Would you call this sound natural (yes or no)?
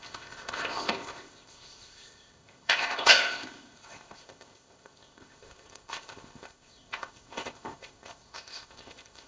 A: no